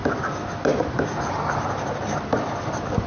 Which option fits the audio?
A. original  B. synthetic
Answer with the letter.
A